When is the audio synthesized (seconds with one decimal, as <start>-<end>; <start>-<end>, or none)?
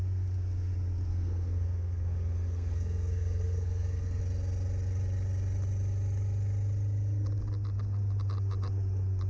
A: 1.1-4.2